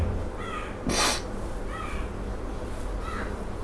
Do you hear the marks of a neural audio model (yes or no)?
no